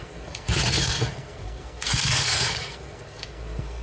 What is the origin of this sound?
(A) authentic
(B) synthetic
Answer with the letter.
B